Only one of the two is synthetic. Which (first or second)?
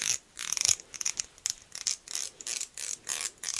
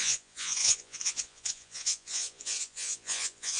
second